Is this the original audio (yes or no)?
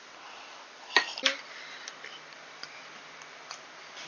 yes